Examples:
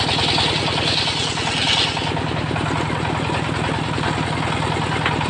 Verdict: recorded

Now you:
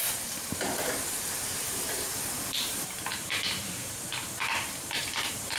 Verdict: remade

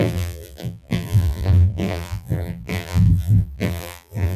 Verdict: remade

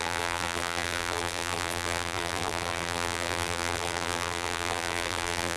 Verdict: remade